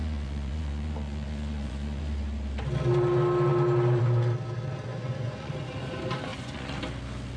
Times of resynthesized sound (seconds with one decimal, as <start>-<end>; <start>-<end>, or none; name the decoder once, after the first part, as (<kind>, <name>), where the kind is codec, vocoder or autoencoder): 0.0-2.0 (vocoder, Vocos); 4.9-5.5; 6.3-6.8